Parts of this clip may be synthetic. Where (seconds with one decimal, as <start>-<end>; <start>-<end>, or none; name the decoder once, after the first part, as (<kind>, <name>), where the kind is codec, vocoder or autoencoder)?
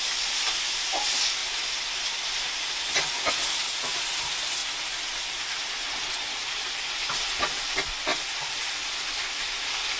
1.4-2.7 (vocoder, BigVGAN v2); 4.6-7.1; 8.1-9.6